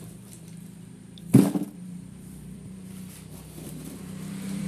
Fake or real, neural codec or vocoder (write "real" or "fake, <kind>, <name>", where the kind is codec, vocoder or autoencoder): fake, vocoder, BigVGAN v2